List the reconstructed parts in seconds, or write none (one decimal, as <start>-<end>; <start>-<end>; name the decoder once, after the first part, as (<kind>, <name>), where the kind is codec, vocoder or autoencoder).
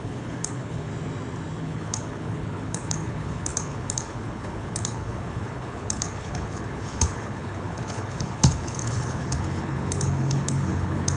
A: 0.0-0.9 (codec, HILCodec); 1.6-11.2